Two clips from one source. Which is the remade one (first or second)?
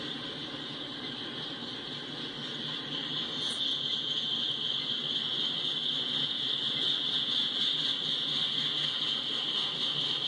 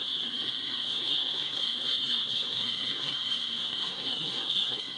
second